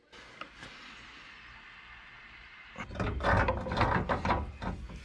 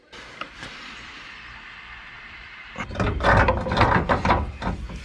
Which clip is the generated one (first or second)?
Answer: second